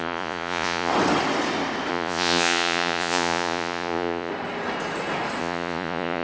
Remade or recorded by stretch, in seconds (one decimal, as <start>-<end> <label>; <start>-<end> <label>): 0.0-0.9 remade; 0.9-1.9 recorded; 1.9-4.3 remade; 4.3-5.4 recorded; 5.4-6.2 remade